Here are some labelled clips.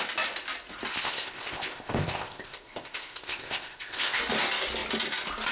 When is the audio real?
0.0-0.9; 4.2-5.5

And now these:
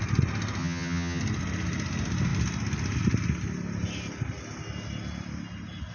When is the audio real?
0.0-0.6; 1.2-5.9